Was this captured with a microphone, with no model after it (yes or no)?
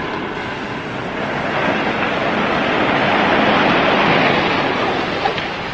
yes